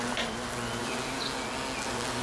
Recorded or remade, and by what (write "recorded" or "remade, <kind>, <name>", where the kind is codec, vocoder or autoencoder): recorded